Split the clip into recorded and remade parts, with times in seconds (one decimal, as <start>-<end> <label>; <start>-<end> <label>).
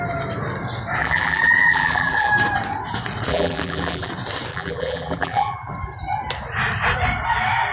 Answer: 0.0-1.0 recorded; 1.0-2.3 remade; 2.3-3.3 recorded; 3.3-4.1 remade; 4.1-4.5 recorded; 4.5-5.7 remade; 5.7-7.7 recorded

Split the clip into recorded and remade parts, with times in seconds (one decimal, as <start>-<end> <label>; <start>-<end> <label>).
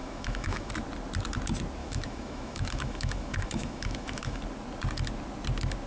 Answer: 0.0-0.7 remade; 0.7-1.8 recorded; 1.8-4.4 remade; 4.4-5.9 recorded